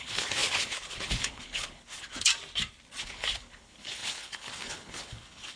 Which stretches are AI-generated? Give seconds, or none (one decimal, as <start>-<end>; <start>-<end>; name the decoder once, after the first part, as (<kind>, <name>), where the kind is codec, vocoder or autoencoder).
0.0-2.3 (codec, HILCodec); 3.0-5.6